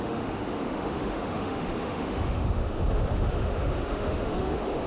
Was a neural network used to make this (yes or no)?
yes